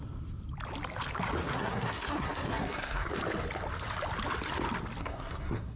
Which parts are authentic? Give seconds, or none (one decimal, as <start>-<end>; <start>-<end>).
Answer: 0.0-1.4; 3.1-5.0